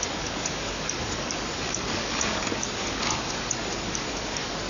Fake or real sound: fake